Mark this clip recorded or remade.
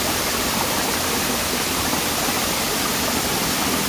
recorded